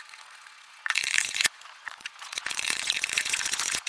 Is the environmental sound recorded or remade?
remade